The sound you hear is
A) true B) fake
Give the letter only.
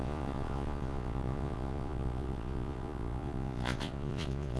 B